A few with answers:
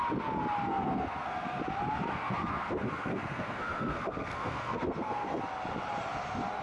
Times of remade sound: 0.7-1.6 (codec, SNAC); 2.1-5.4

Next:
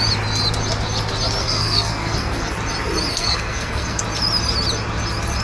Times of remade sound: 1.4-2.5 (codec, SNAC); 3.1-4.0

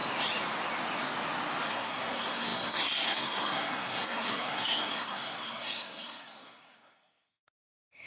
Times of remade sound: 1.7-8.1 (codec, SNAC)

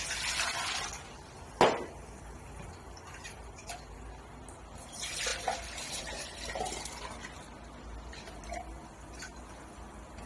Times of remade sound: none